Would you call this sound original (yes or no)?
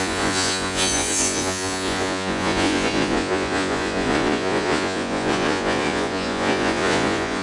no